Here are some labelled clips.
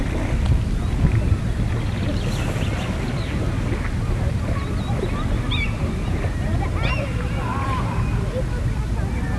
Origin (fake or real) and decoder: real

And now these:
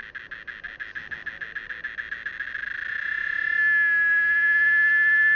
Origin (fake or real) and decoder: real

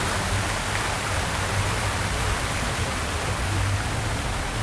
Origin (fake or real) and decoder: real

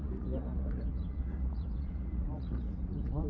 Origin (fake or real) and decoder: fake, vocoder, Vocos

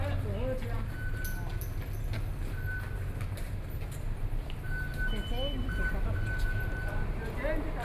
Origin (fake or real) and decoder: real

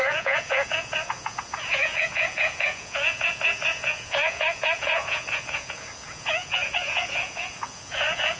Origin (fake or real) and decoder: fake, vocoder, Vocos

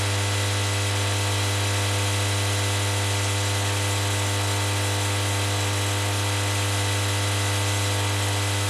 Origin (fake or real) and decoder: real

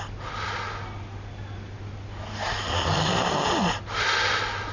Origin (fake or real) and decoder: real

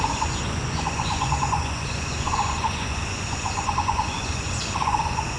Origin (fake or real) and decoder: fake, vocoder, Vocos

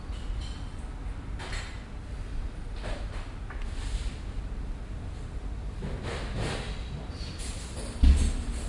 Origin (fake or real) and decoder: real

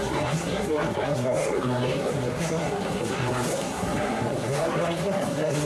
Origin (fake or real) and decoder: fake, codec, SNAC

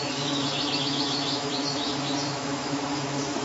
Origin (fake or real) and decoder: fake, autoencoder, DAC-VAE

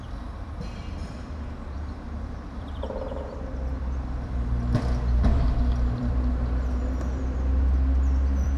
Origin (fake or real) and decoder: fake, vocoder, BigVGAN v2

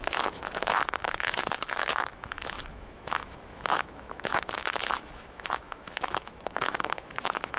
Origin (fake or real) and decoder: fake, autoencoder, DAC-VAE